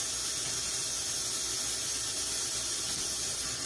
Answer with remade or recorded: recorded